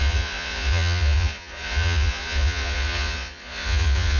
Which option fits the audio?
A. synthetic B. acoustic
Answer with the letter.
A